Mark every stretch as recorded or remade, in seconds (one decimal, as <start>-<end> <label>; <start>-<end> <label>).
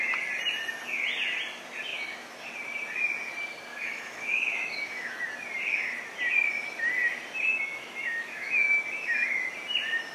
0.0-1.9 recorded; 1.9-2.5 remade; 2.5-3.7 recorded; 3.7-5.2 remade; 5.2-7.5 recorded; 7.5-9.5 remade; 9.5-10.1 recorded